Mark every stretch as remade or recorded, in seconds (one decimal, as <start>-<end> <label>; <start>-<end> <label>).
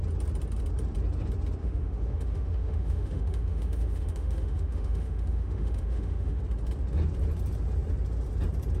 0.0-1.6 recorded; 1.6-6.4 remade; 6.4-8.8 recorded